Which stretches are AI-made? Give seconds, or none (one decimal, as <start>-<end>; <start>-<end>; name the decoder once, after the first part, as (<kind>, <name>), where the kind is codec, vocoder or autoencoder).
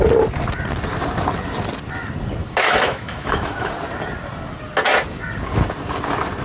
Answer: 2.4-3.7 (autoencoder, DAC-VAE)